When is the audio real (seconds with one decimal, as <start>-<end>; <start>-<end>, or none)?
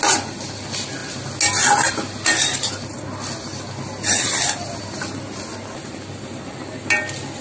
0.0-7.4